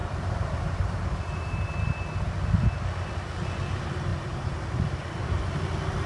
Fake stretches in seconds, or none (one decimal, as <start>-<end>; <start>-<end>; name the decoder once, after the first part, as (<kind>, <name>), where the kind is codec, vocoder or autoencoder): 0.0-1.7 (vocoder, BigVGAN v2)